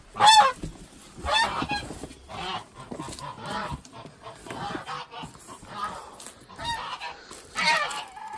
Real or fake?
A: real